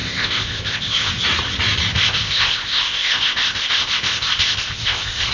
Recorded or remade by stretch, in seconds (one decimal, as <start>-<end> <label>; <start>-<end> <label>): 0.0-1.1 remade; 1.1-1.9 recorded; 1.9-5.3 remade